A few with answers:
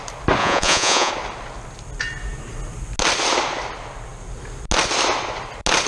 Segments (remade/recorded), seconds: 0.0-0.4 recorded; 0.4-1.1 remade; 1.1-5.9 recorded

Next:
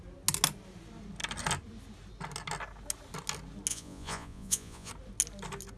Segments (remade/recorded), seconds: 0.0-3.7 recorded; 3.7-4.9 remade; 4.9-5.8 recorded

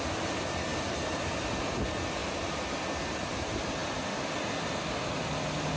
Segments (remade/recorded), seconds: 0.0-5.8 recorded

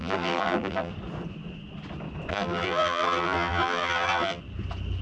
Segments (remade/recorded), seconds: 0.0-0.9 remade; 0.9-2.3 recorded; 2.3-4.4 remade; 4.4-5.0 recorded